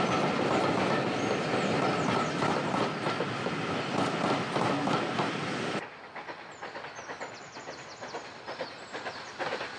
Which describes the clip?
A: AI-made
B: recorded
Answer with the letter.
B